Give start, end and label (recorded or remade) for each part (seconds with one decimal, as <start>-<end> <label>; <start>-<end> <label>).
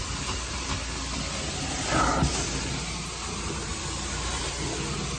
0.0-2.7 remade; 2.7-5.2 recorded